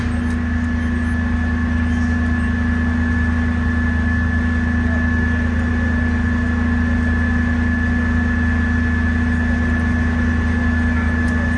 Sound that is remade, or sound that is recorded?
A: recorded